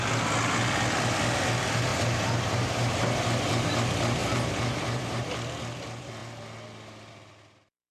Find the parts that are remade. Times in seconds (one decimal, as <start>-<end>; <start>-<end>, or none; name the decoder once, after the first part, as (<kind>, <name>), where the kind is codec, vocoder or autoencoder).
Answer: 1.9-3.0 (vocoder, BigVGAN v2); 4.2-5.2